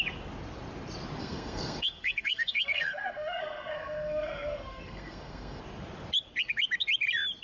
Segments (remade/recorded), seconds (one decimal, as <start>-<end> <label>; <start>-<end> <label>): 0.0-1.2 recorded; 1.2-5.6 remade; 5.6-7.4 recorded